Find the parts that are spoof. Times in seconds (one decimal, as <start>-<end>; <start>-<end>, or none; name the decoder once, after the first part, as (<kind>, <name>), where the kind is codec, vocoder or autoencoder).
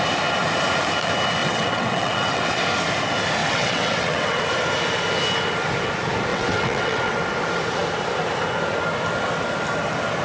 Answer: 1.4-2.6 (vocoder, WaveNeXt); 3.4-4.4; 6.3-7.2